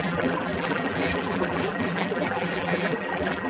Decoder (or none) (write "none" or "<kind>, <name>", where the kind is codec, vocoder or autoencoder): vocoder, BigVGAN v2